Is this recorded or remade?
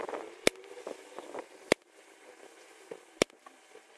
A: recorded